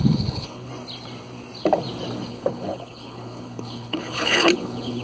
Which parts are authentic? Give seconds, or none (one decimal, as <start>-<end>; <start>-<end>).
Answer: 0.7-2.3